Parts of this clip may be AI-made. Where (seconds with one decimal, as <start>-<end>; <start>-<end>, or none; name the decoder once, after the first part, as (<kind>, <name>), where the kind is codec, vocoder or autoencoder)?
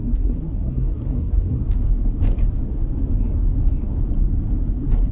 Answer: 0.0-1.6 (codec, SNAC)